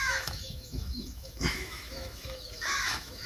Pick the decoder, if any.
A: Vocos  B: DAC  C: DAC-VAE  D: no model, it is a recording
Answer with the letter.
C